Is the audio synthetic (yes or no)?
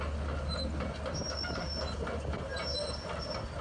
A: no